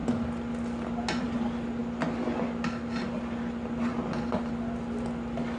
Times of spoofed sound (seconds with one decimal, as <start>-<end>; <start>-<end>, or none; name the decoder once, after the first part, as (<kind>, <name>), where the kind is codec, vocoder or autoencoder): none